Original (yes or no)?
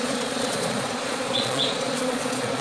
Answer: no